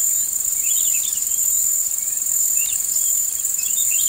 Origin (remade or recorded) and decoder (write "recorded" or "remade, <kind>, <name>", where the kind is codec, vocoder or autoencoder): remade, vocoder, BigVGAN v2